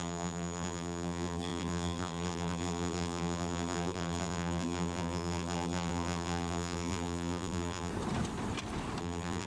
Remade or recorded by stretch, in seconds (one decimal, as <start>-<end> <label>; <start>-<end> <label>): 0.0-7.9 remade; 7.9-9.0 recorded; 9.0-9.5 remade